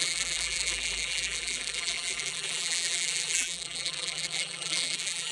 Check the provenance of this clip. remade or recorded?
remade